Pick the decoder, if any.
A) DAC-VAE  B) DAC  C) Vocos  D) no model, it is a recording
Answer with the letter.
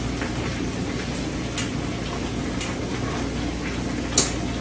D